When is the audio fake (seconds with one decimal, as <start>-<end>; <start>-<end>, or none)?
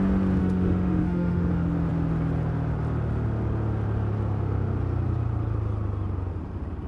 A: 0.4-1.5